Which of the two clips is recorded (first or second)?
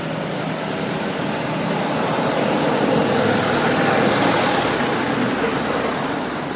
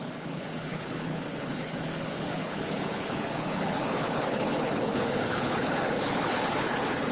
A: first